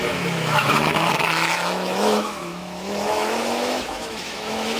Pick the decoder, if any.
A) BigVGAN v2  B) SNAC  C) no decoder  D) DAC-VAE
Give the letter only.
D